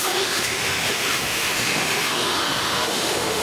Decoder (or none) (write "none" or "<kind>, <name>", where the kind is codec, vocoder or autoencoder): autoencoder, DAC-VAE